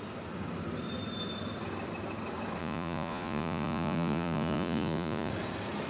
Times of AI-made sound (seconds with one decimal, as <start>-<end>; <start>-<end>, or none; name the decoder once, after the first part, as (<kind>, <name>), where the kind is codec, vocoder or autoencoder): 2.6-5.3 (vocoder, Vocos)